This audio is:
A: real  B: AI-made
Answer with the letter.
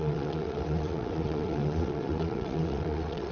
B